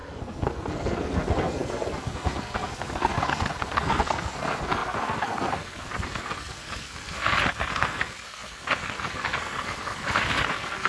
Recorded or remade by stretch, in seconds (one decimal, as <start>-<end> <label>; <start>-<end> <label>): 0.0-10.9 remade